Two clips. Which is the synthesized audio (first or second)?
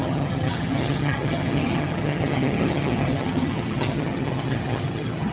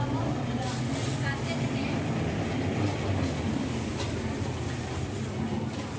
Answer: first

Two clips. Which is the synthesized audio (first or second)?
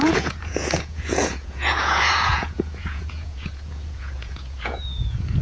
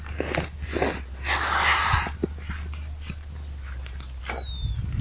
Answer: first